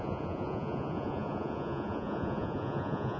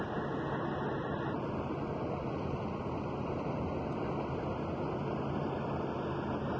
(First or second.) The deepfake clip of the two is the first